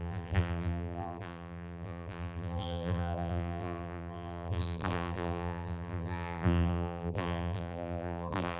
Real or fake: fake